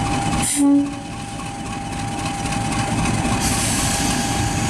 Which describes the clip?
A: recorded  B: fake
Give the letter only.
A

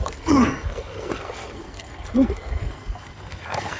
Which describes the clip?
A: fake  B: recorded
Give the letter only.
A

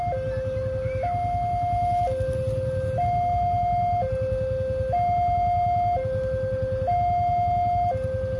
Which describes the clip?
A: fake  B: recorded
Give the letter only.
B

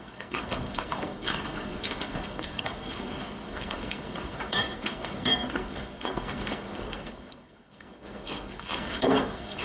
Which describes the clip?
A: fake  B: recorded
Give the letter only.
A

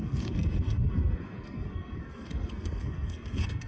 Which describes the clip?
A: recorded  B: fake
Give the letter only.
B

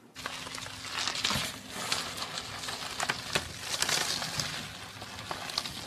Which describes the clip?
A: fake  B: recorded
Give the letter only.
B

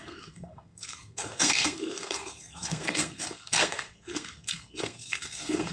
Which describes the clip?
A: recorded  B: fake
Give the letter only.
B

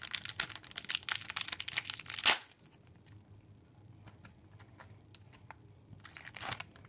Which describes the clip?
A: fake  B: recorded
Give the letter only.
B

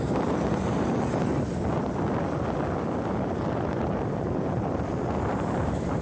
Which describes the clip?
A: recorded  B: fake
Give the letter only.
A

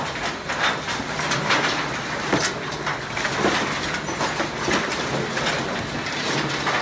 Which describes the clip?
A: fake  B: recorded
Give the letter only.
B